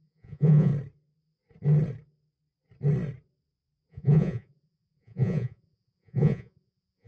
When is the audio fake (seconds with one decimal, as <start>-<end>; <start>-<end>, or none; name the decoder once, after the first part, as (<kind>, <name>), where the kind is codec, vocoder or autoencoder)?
0.0-0.7 (vocoder, Vocos); 3.9-7.1